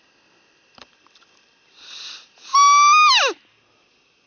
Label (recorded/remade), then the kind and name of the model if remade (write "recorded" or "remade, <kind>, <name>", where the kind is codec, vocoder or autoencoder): recorded